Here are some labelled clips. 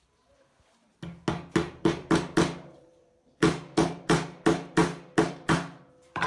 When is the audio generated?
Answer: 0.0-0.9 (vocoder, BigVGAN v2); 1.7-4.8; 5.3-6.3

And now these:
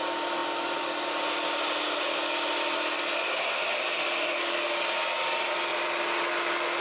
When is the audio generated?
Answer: none

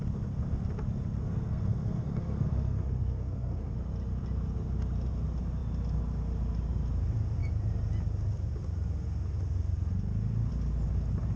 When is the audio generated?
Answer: 1.2-3.7 (codec, SNAC)

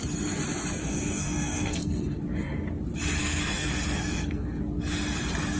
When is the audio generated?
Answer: 0.8-2.2 (codec, SNAC); 3.2-4.6

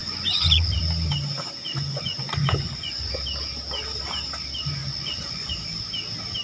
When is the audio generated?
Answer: 0.0-0.8 (vocoder, Vocos); 1.6-3.1; 4.8-5.5

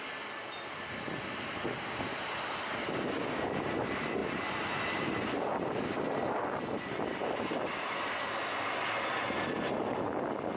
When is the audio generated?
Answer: 4.2-5.1 (vocoder, BigVGAN v2)

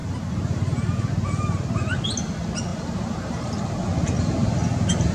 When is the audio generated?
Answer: 0.0-1.1 (vocoder, BigVGAN v2); 2.7-3.5